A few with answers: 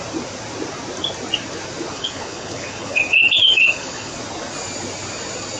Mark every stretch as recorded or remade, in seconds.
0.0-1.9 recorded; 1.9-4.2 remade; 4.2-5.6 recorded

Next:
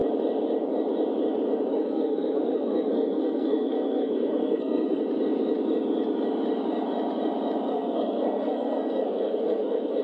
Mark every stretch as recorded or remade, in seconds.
0.0-1.7 recorded; 1.7-5.0 remade; 5.0-7.7 recorded; 7.7-10.0 remade

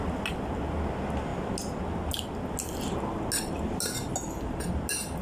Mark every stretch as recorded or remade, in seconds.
0.0-5.2 recorded

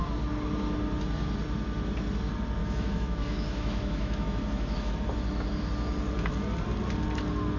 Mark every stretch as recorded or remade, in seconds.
0.0-2.6 recorded; 2.6-4.9 remade; 4.9-7.6 recorded

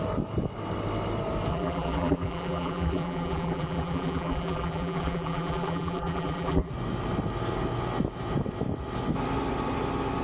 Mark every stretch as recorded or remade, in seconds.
0.0-1.5 recorded; 1.5-6.7 remade; 6.7-10.2 recorded